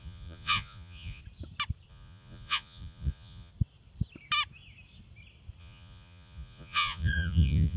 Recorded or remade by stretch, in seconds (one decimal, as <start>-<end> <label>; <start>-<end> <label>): 0.0-1.2 remade; 1.2-1.9 recorded; 1.9-3.5 remade; 3.5-5.6 recorded; 5.6-7.8 remade